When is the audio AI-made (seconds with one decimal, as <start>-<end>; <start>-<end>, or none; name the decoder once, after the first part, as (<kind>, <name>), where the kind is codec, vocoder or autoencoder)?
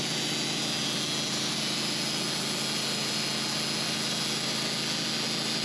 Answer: none